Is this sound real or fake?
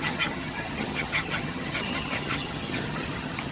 fake